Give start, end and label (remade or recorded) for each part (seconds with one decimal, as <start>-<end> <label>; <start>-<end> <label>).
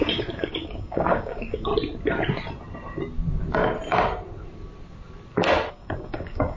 0.0-1.7 remade; 1.7-5.7 recorded; 5.7-6.6 remade